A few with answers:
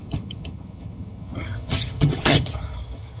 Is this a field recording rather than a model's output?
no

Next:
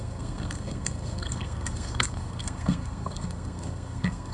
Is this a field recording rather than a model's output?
no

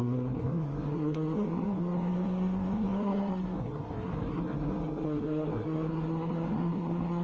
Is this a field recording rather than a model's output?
no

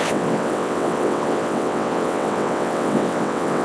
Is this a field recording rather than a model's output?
no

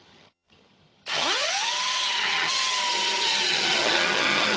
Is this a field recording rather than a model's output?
no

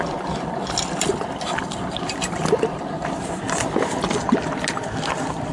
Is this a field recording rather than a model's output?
yes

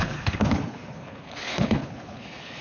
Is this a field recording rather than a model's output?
no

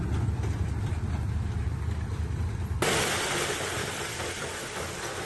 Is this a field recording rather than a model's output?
yes